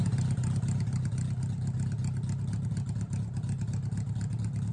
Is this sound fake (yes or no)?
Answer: no